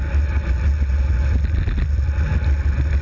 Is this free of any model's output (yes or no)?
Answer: yes